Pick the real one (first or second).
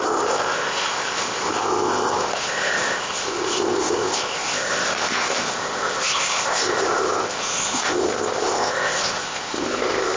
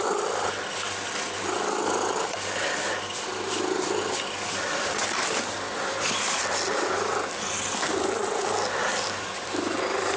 second